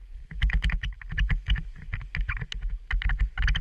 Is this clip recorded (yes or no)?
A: yes